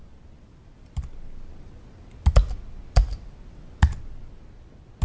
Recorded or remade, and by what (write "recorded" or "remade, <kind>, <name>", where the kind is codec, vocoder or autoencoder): recorded